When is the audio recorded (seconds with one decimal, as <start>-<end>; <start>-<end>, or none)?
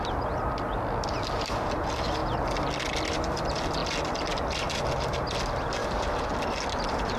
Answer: 0.0-7.2